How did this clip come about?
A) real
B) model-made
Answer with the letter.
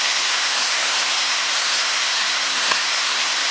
B